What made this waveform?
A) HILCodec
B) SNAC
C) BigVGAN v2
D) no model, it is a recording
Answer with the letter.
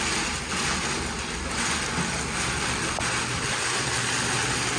D